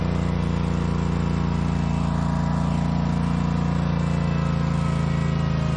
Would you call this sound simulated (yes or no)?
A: no